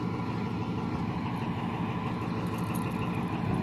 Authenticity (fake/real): real